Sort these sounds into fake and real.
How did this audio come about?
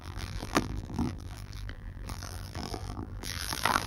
fake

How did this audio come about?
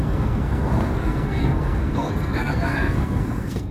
fake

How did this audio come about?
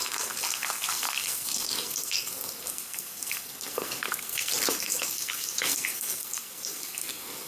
fake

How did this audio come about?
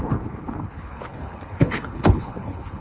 fake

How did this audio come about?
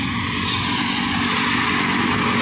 real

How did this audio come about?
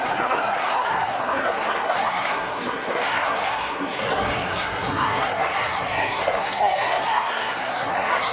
fake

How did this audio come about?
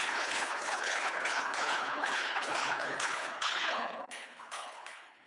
fake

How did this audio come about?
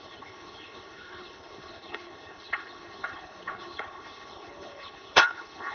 fake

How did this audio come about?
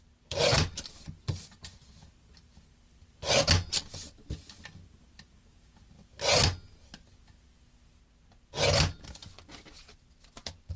real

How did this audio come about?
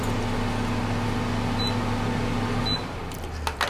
real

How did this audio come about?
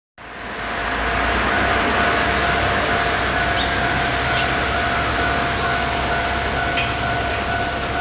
real